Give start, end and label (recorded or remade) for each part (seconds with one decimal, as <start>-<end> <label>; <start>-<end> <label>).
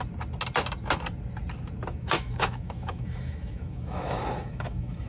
0.0-1.9 recorded; 1.9-5.1 remade